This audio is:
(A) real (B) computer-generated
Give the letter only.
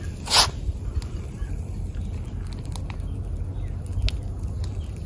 A